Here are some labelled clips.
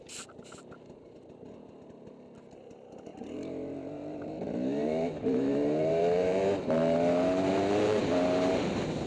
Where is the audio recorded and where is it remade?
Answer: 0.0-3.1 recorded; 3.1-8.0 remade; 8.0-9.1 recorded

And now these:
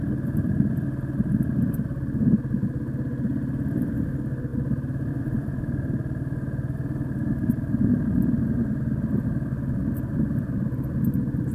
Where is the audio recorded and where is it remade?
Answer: 0.0-4.5 recorded; 4.5-5.1 remade; 5.1-11.5 recorded

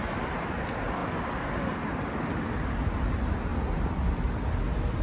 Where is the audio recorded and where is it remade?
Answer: 0.0-3.5 recorded; 3.5-4.2 remade; 4.2-5.0 recorded

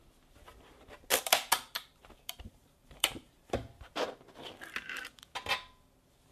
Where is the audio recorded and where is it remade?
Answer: 0.0-2.0 recorded; 2.0-3.9 remade; 3.9-6.3 recorded

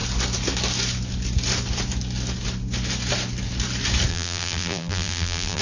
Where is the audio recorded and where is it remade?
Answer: 0.0-4.1 recorded; 4.1-5.6 remade